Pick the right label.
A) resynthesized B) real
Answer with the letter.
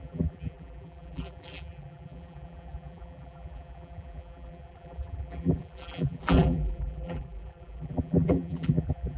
A